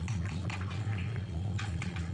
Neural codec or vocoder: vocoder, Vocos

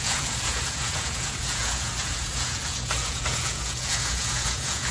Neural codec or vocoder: vocoder, Vocos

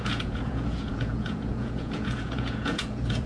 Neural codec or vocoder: vocoder, Vocos